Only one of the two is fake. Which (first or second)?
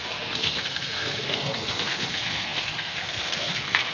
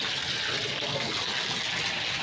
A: first